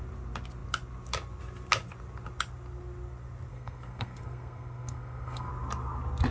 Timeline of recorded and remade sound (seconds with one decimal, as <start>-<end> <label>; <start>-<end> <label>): 0.0-3.5 recorded; 3.5-5.5 remade; 5.5-6.3 recorded